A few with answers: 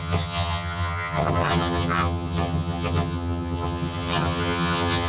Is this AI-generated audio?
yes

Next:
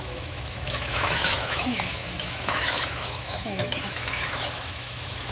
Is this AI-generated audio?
yes